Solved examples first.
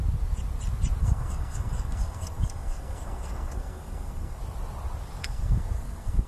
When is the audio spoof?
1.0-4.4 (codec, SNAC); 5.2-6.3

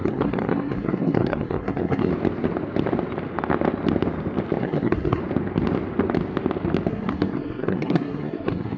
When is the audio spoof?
0.0-2.1 (codec, SNAC); 4.6-5.2; 6.9-8.8

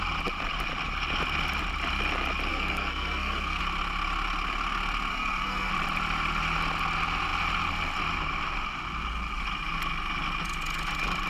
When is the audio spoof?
2.5-3.6 (codec, SNAC); 5.1-5.7

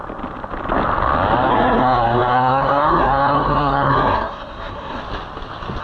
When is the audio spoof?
1.5-5.0 (codec, SNAC)

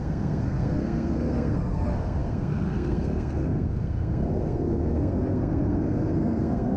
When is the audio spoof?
0.0-6.8 (codec, SNAC)

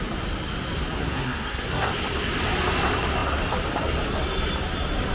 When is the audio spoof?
1.0-1.9 (codec, SNAC)

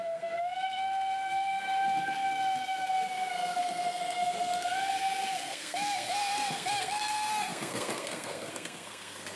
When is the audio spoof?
0.0-9.4 (codec, SNAC)

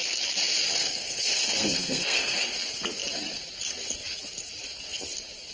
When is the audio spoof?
0.8-2.5 (codec, SNAC)